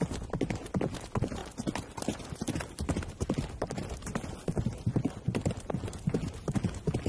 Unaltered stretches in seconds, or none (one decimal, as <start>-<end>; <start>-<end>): 0.0-1.4; 5.7-7.1